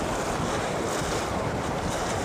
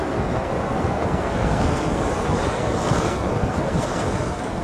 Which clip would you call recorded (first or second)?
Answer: first